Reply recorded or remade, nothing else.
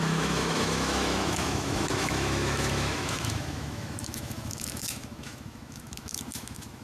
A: remade